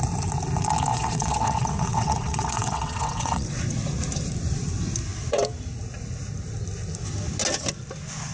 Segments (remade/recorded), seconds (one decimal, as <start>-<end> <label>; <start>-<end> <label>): 0.0-0.9 recorded; 0.9-3.6 remade; 3.6-8.3 recorded